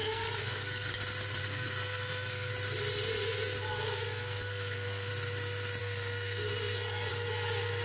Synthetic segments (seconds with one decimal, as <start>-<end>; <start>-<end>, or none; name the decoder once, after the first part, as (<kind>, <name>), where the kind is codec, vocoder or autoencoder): 0.0-0.9 (codec, SNAC); 1.4-2.5; 3.7-5.1; 5.8-7.1

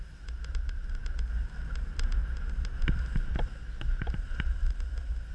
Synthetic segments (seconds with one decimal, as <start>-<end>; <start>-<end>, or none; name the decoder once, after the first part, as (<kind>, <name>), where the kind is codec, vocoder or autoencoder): none

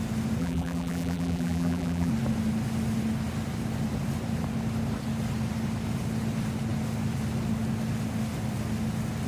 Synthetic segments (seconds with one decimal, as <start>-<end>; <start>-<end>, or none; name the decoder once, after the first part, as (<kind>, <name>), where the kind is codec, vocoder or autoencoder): 0.4-2.1 (vocoder, BigVGAN v2)